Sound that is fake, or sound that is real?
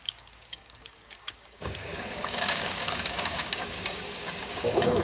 fake